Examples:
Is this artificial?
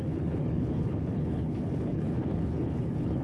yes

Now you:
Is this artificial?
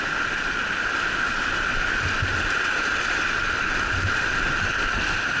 no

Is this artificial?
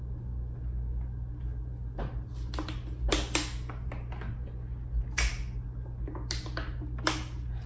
no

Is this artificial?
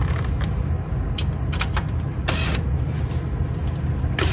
no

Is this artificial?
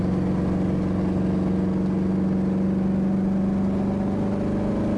no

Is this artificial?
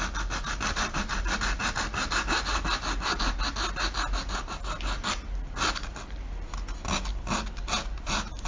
no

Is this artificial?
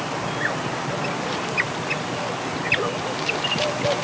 no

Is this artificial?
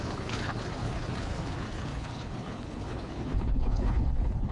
yes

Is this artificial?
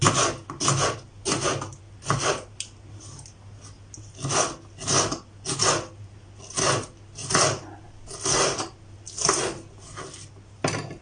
no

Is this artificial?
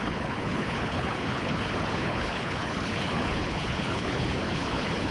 yes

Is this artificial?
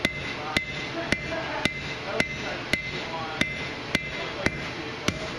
no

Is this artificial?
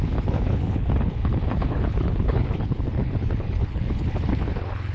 yes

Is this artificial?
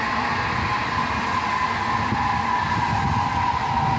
no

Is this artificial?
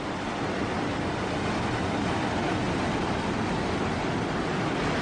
no